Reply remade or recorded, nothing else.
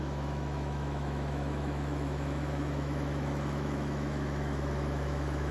remade